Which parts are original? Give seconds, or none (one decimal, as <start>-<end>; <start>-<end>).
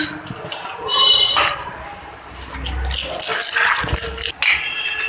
0.0-0.7; 1.7-5.1